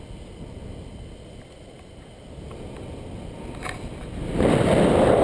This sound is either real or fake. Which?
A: real